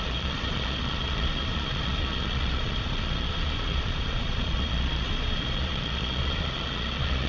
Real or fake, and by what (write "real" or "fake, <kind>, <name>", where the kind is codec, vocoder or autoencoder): fake, vocoder, Vocos